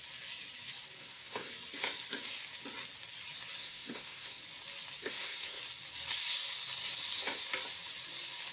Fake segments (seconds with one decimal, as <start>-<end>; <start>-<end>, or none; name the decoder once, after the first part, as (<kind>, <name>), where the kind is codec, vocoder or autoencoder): 1.0-1.5 (codec, SNAC); 3.6-4.4; 5.0-5.6